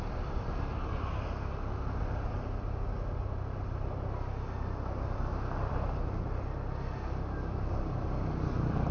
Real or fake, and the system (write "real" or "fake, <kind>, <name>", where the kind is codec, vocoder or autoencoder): real